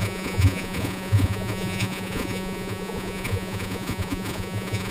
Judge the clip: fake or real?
fake